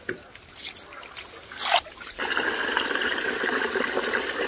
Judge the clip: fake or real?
real